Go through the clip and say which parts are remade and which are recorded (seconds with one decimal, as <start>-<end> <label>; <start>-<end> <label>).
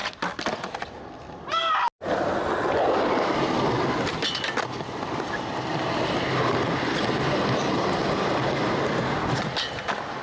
0.0-10.2 recorded